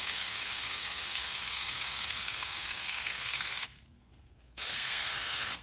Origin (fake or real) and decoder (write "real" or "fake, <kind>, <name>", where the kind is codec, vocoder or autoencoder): fake, codec, SNAC